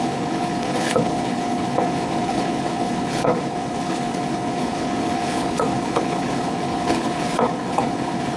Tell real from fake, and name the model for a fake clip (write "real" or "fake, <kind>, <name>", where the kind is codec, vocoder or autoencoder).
fake, codec, HILCodec